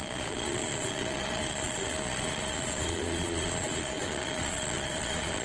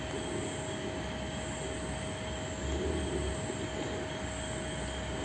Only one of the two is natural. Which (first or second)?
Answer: second